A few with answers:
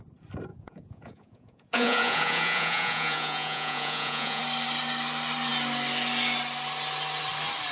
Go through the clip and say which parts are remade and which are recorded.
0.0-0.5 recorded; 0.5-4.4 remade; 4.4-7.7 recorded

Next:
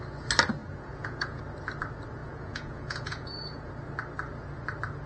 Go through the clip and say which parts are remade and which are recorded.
0.0-0.6 recorded; 0.6-1.4 remade; 1.4-2.2 recorded; 2.2-3.7 remade; 3.7-5.1 recorded

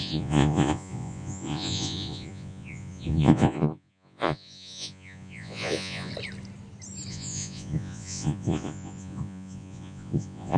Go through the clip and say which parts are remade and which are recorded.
0.0-6.1 remade; 6.1-7.1 recorded; 7.1-10.6 remade

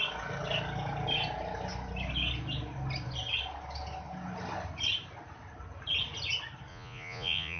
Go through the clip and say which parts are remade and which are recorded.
0.0-6.7 recorded; 6.7-7.6 remade

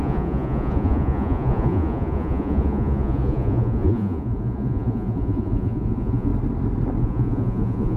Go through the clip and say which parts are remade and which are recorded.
0.0-6.3 remade; 6.3-7.0 recorded; 7.0-8.0 remade

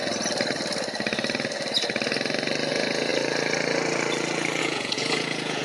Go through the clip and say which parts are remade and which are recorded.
0.0-2.7 recorded; 2.7-3.1 remade; 3.1-4.6 recorded; 4.6-5.6 remade

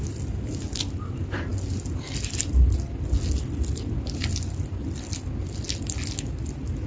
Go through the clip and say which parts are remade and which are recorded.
0.0-6.9 recorded